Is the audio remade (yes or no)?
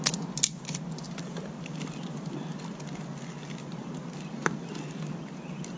no